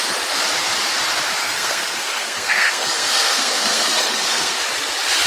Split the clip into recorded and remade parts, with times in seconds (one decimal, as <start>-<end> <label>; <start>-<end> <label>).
0.0-1.4 recorded; 1.4-4.6 remade; 4.6-5.3 recorded

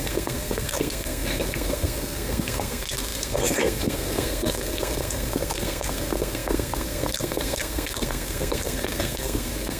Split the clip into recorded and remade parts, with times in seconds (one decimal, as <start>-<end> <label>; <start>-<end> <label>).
0.0-9.8 remade

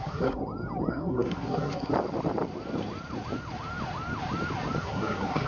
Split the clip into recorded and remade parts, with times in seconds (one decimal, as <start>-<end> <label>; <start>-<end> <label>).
0.0-0.4 remade; 0.4-0.9 recorded; 0.9-1.9 remade; 1.9-4.8 recorded; 4.8-5.5 remade

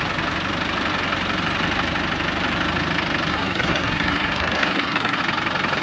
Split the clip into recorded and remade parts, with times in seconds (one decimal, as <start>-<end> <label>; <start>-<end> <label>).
0.0-3.3 recorded; 3.3-5.2 remade; 5.2-5.8 recorded

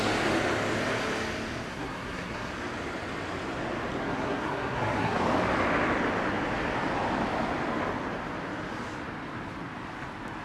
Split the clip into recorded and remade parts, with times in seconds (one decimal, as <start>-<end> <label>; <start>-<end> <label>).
0.0-1.7 recorded; 1.7-2.5 remade; 2.5-4.0 recorded; 4.0-5.2 remade; 5.2-10.4 recorded

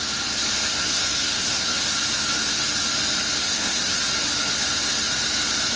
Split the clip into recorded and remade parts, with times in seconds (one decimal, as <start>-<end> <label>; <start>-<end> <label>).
0.0-0.7 recorded; 0.7-1.8 remade; 1.8-3.4 recorded; 3.4-4.0 remade; 4.0-5.8 recorded